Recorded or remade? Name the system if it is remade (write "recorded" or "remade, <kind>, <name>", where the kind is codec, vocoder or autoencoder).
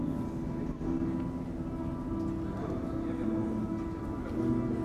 recorded